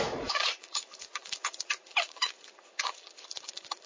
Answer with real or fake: fake